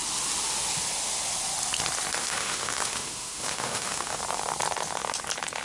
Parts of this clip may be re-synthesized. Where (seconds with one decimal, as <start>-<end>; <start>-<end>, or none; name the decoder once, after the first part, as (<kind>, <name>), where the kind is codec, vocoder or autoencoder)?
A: 2.2-4.2 (autoencoder, DAC-VAE)